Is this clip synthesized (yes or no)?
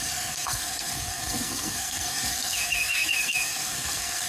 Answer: yes